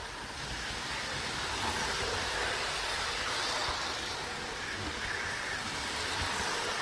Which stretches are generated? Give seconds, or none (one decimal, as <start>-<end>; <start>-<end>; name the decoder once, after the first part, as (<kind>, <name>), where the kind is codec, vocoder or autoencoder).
none

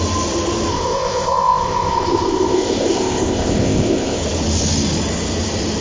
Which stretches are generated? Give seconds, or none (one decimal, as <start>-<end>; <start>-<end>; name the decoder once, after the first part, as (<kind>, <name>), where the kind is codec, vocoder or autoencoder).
0.7-4.2 (codec, ZipCodec)

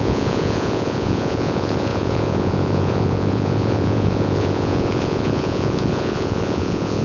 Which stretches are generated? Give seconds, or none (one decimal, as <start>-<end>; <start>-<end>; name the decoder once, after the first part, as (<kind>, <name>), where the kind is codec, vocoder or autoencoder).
0.0-7.0 (vocoder, Vocos)

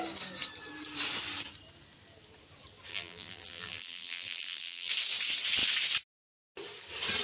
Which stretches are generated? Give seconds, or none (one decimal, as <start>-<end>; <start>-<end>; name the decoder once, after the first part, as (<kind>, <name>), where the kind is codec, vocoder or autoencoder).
2.9-4.9 (vocoder, BigVGAN v2)